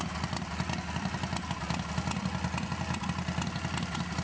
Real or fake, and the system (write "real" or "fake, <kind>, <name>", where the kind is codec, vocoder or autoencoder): real